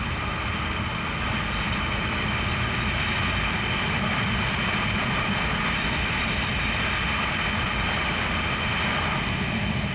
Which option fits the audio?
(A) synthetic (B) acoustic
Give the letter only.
B